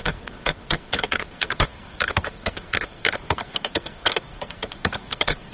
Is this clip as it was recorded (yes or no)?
no